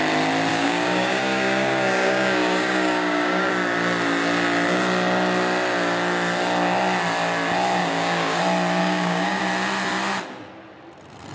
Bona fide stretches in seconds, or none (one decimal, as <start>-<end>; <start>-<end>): 0.0-0.5; 3.5-7.8; 8.4-8.8; 9.4-11.3